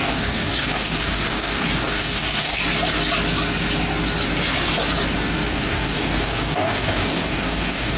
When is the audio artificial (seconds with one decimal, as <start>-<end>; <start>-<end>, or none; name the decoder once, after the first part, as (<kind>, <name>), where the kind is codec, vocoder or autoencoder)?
0.0-2.6 (codec, DAC); 5.5-8.0